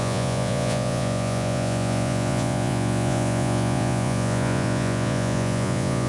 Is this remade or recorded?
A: remade